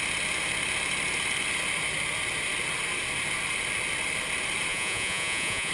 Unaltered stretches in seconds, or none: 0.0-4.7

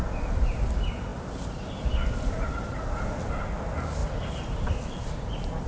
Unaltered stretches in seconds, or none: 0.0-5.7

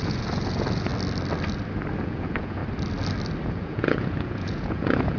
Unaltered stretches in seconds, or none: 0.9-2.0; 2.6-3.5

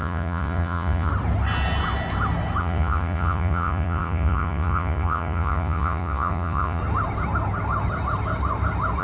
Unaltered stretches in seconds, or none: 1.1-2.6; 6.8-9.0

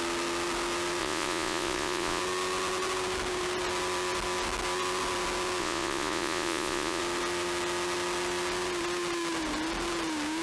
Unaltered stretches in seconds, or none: 0.0-1.0; 2.2-5.6; 7.0-10.4

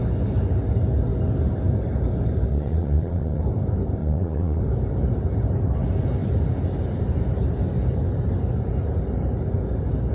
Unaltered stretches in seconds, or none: 0.0-2.5; 3.4-4.0; 4.6-10.1